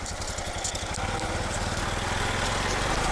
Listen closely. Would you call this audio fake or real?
real